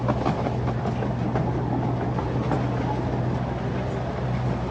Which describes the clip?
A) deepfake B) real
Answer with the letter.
B